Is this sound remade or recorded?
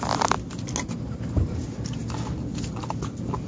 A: recorded